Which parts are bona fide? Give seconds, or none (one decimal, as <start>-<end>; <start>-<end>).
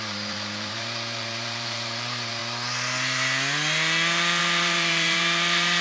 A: 2.4-4.4